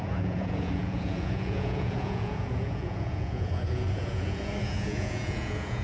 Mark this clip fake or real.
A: fake